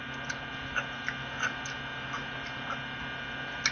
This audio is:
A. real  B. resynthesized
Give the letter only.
A